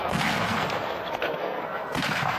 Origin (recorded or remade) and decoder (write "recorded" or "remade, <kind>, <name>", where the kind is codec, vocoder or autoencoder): remade, codec, SNAC